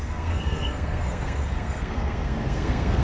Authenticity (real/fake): fake